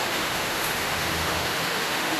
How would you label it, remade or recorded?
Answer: remade